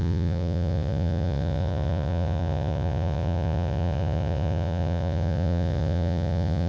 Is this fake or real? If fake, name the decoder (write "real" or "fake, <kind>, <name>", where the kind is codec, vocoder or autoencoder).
fake, vocoder, Vocos